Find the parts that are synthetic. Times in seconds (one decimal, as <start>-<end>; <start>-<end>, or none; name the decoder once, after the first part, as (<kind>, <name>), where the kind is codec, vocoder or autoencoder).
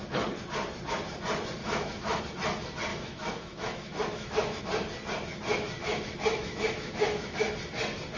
1.6-2.2 (autoencoder, DAC-VAE); 2.9-4.6; 5.8-7.5